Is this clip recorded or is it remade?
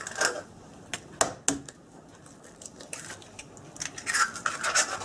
recorded